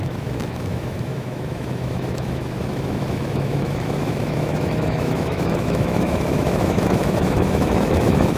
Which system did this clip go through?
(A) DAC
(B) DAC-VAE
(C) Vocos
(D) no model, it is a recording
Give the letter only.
B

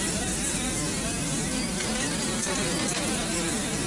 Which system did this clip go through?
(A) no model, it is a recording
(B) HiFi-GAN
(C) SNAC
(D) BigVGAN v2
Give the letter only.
D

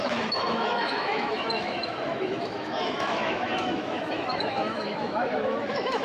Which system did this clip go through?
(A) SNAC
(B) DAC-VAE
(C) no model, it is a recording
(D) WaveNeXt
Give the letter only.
B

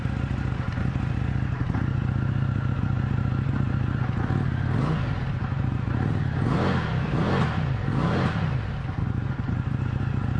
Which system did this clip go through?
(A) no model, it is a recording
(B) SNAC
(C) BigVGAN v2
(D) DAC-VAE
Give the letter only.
A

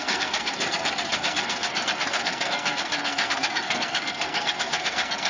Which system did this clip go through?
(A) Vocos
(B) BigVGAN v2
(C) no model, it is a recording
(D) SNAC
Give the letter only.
D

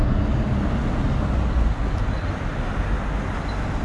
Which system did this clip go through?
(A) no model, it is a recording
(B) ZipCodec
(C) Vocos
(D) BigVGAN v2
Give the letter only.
A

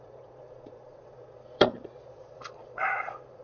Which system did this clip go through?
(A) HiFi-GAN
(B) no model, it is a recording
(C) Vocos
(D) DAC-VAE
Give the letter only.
C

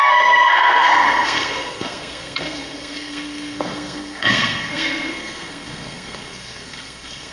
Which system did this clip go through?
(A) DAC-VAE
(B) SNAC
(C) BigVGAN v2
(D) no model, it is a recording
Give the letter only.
B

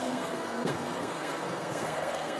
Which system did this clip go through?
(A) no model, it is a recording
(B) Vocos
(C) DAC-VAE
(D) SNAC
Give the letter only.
D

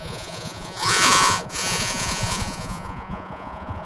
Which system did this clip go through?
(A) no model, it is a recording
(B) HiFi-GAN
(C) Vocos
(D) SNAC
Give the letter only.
C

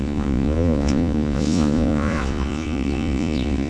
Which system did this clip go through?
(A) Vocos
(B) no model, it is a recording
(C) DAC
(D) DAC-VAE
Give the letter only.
A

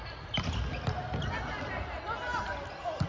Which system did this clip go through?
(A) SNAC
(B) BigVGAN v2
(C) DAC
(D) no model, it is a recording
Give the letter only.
D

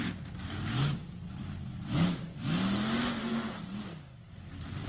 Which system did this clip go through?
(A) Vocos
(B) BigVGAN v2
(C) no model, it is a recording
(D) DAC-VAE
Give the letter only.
C